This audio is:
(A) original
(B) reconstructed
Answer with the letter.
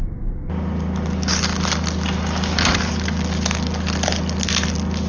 A